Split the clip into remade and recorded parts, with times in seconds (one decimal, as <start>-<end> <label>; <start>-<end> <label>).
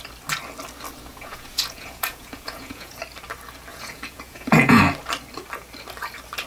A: 0.0-1.1 recorded; 1.1-3.0 remade; 3.0-3.7 recorded; 3.7-4.8 remade; 4.8-6.5 recorded